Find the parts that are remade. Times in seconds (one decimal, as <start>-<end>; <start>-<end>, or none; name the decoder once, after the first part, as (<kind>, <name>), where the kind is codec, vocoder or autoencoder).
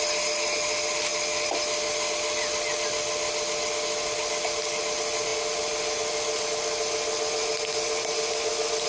none